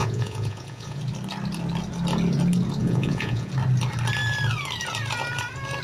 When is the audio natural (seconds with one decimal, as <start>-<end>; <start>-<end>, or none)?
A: 1.0-2.8; 3.5-5.8